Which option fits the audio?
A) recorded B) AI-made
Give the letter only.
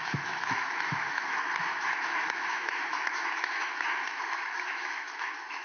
B